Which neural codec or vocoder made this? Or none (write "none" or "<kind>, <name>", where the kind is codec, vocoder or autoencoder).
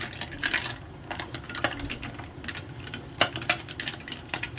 none